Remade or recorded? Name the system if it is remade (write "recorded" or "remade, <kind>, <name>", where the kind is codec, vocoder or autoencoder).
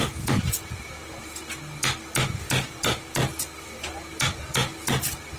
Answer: recorded